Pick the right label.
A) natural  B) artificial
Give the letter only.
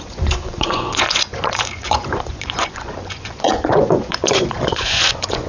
B